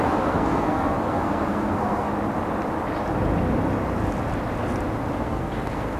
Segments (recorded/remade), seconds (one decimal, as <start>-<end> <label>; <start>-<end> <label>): 0.0-2.1 remade; 2.1-5.2 recorded; 5.2-6.0 remade